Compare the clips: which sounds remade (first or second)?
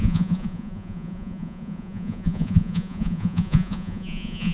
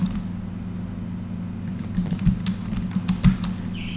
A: first